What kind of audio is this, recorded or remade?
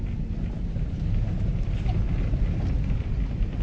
recorded